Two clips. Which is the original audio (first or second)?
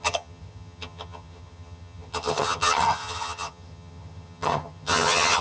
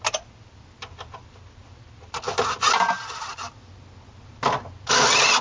second